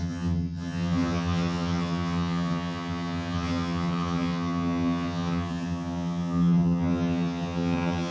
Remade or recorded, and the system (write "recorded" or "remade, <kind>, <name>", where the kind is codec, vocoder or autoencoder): remade, vocoder, HiFi-GAN